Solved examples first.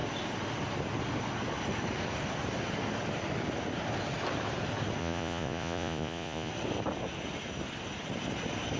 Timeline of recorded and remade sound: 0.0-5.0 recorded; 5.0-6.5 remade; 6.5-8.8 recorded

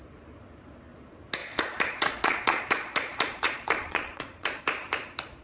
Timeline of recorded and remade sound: 0.0-1.4 recorded; 1.4-4.6 remade; 4.6-5.4 recorded